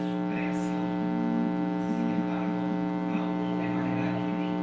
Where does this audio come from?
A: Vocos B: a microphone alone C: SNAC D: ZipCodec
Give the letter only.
B